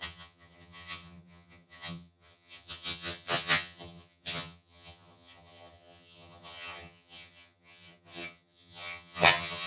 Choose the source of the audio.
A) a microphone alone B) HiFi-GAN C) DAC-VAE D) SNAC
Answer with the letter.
B